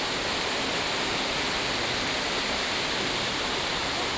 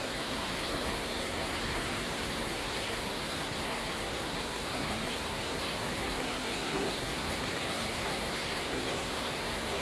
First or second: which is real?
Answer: first